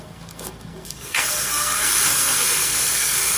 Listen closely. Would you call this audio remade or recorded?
remade